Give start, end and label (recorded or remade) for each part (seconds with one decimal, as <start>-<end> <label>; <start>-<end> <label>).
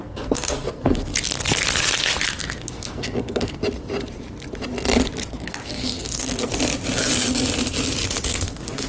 0.0-1.1 remade; 1.1-2.4 recorded; 2.4-3.6 remade; 3.6-5.3 recorded; 5.3-6.5 remade; 6.5-8.3 recorded; 8.3-8.9 remade